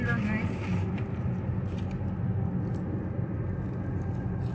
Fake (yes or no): no